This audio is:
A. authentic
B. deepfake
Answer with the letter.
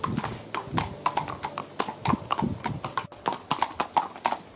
A